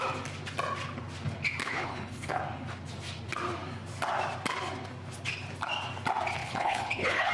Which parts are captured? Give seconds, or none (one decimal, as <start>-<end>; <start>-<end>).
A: 0.0-1.6; 2.4-6.4